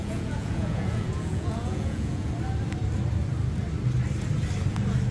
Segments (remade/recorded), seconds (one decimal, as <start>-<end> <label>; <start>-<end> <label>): 0.0-2.3 remade; 2.3-5.1 recorded

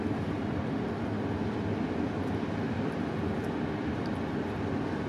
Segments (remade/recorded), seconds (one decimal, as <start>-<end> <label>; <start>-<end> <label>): 0.0-5.1 recorded